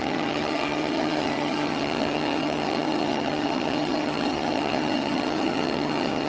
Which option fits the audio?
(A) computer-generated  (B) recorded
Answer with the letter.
A